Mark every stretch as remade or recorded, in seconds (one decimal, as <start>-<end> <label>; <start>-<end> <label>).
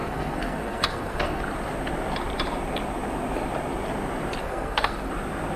0.0-1.4 remade; 1.4-4.4 recorded; 4.4-5.1 remade; 5.1-5.6 recorded